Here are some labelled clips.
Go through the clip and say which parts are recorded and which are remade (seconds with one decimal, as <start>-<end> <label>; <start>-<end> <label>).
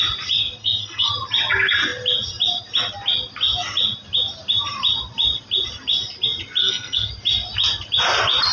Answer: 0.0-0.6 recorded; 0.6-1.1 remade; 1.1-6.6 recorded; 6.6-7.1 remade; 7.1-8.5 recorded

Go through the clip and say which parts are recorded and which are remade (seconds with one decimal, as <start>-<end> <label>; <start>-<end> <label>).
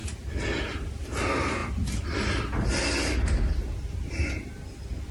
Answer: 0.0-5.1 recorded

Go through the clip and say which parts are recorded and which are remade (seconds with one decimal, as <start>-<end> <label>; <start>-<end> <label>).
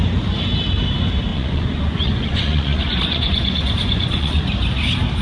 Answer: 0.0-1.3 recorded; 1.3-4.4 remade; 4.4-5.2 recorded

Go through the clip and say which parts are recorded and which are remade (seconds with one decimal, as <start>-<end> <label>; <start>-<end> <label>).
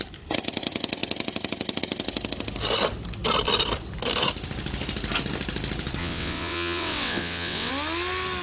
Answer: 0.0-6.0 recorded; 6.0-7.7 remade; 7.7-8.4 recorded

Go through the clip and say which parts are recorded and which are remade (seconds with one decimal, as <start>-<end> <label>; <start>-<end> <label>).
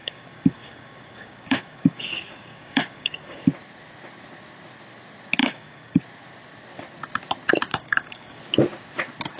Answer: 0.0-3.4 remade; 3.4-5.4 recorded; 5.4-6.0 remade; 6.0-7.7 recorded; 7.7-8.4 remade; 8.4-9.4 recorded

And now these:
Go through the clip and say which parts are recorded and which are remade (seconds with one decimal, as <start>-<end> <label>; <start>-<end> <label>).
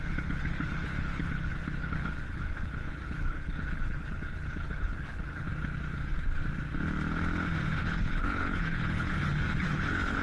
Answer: 0.0-5.5 remade; 5.5-7.8 recorded; 7.8-10.2 remade